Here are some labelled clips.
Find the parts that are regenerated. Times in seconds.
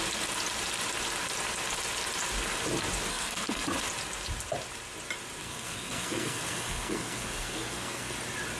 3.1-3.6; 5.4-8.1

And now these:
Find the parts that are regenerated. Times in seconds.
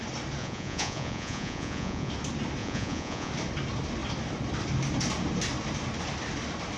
0.4-2.1; 2.6-3.3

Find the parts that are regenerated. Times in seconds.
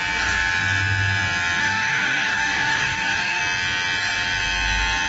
1.6-3.4